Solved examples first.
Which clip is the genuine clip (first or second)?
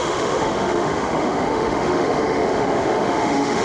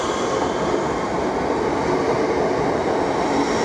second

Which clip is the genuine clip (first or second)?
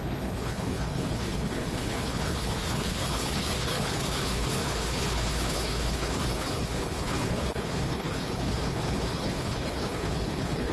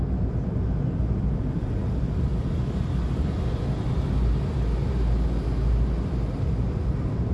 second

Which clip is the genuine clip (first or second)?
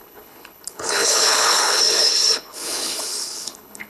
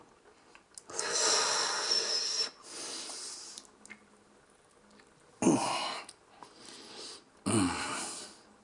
second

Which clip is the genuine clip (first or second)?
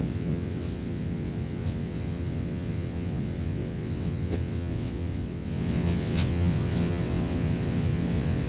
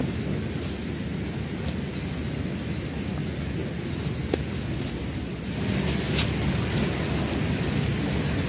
second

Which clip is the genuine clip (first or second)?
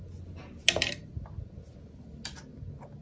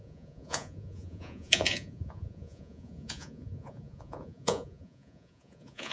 first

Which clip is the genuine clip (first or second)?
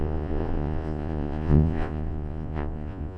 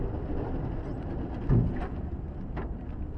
second